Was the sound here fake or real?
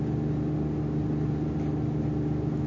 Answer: real